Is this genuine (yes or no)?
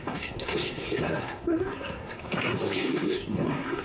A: no